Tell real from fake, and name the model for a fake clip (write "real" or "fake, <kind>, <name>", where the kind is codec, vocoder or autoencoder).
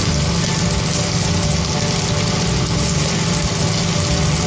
real